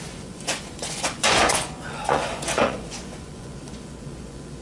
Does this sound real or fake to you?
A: fake